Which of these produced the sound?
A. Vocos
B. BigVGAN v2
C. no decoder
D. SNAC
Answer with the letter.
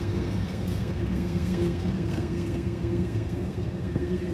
D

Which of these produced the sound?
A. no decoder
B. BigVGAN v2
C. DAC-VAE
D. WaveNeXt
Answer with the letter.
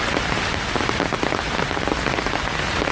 A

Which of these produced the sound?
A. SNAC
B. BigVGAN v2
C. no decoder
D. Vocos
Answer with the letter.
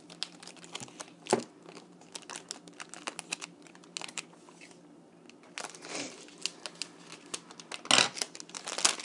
C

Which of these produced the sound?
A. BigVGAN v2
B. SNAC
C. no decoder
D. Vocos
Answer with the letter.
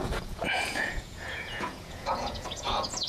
D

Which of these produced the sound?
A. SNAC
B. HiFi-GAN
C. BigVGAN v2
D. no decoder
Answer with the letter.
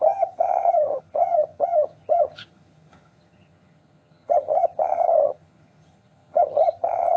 B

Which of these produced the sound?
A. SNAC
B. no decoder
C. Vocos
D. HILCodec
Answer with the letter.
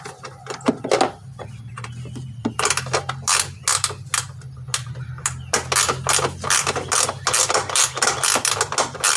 B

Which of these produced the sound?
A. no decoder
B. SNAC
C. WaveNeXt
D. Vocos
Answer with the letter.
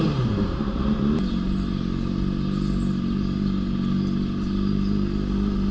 A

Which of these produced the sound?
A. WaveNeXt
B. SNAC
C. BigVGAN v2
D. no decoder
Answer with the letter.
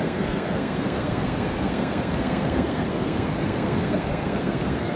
B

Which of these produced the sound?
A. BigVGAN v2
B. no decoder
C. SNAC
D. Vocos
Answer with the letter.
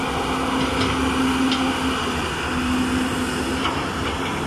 B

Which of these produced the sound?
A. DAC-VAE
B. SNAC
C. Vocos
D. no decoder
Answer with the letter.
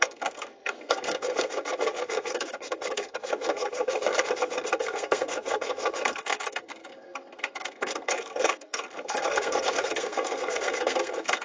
B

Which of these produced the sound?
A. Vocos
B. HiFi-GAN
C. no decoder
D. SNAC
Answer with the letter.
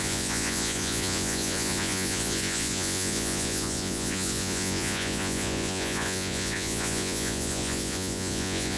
A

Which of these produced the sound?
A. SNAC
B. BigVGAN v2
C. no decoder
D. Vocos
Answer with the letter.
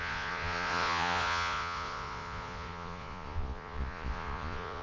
D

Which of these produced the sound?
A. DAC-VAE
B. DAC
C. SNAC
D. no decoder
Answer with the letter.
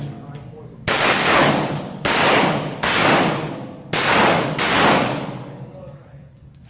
B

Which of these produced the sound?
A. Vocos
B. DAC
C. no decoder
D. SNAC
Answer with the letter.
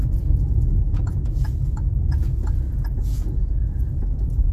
A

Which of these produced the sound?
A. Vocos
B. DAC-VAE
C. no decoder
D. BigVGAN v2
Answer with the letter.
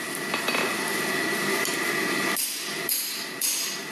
D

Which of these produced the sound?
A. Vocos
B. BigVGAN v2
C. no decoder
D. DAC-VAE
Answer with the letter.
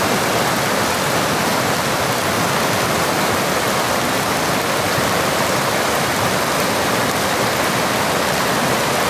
C